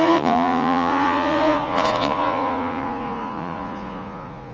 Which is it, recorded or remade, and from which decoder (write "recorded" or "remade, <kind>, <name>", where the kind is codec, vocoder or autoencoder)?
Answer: remade, vocoder, Vocos